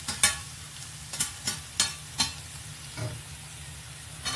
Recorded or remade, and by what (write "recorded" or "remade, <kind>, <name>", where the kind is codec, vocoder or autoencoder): recorded